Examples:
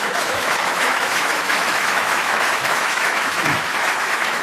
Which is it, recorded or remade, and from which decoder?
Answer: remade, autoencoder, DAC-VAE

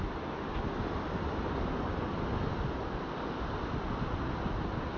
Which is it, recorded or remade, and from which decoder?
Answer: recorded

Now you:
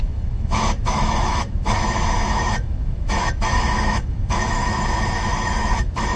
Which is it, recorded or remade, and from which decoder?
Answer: remade, autoencoder, DAC-VAE